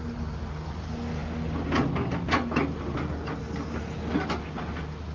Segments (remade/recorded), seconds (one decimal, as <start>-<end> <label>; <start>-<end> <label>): 0.0-5.1 recorded